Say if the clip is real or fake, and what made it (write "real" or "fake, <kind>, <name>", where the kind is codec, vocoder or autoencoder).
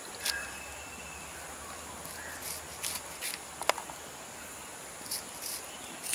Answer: real